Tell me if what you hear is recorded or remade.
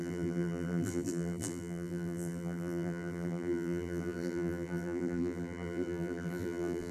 remade